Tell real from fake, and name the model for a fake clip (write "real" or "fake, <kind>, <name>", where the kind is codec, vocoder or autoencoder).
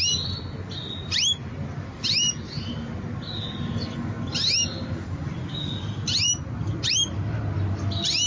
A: real